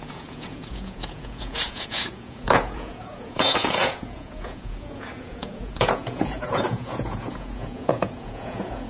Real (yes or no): no